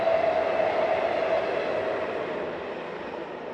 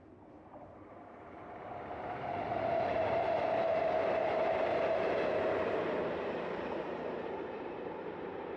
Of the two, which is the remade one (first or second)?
second